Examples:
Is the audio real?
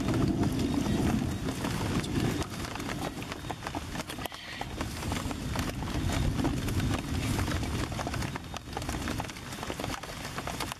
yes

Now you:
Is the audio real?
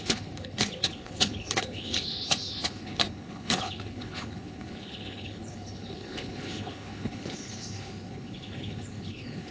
no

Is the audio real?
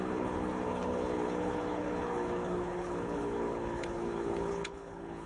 no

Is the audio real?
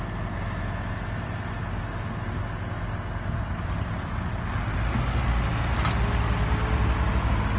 yes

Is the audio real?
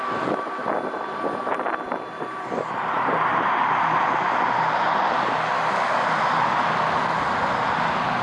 yes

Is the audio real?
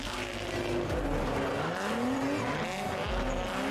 yes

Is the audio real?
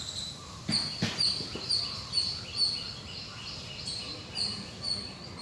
yes